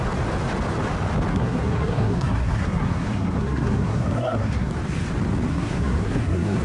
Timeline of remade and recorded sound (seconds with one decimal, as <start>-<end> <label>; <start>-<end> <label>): 0.0-1.3 recorded; 1.3-4.7 remade; 4.7-5.5 recorded; 5.5-6.6 remade

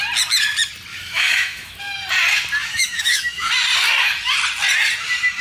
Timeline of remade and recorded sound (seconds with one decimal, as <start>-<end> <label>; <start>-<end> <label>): 0.0-0.9 recorded; 0.9-1.8 remade; 1.8-2.6 recorded; 2.6-3.5 remade; 3.5-5.4 recorded

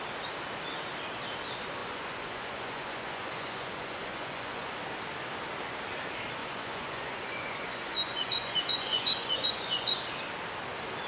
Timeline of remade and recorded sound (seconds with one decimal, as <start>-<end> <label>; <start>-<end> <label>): 0.0-1.8 recorded; 1.8-4.7 remade; 4.7-6.4 recorded; 6.4-10.0 remade; 10.0-11.1 recorded

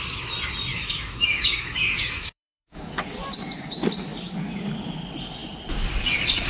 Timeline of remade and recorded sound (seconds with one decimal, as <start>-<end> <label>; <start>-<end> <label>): 0.0-0.7 recorded; 0.7-3.0 remade; 3.0-6.5 recorded